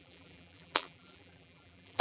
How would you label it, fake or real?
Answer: fake